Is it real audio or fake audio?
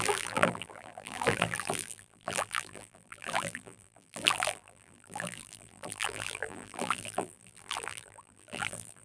fake